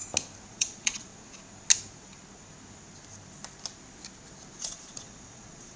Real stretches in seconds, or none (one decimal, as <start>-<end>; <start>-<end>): 0.0-0.5; 1.1-4.6